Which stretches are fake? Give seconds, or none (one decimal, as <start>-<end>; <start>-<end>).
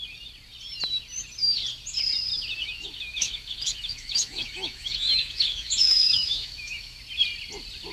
2.3-7.0